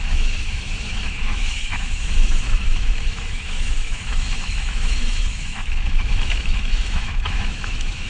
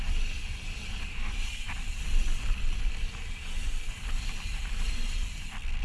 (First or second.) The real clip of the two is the second